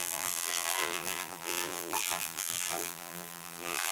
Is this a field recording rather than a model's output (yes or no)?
no